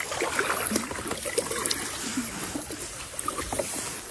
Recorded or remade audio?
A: recorded